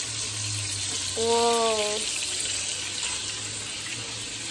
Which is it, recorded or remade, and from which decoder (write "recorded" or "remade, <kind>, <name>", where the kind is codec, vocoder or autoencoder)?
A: recorded